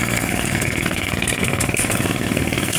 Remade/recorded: remade